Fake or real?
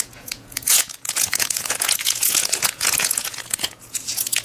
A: fake